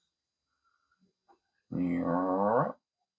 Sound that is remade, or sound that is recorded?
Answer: recorded